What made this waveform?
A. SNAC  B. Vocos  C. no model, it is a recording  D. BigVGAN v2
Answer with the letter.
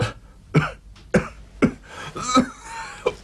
C